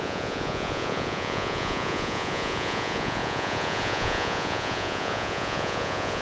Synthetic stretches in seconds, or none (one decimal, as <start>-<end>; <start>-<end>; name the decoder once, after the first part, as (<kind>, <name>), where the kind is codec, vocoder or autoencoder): 0.0-6.2 (vocoder, Vocos)